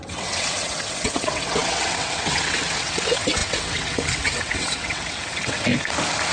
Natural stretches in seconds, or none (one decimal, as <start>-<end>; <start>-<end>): 5.7-6.3

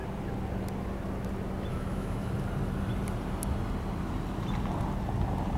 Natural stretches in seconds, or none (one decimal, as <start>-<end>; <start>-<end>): 0.0-1.7; 2.3-5.6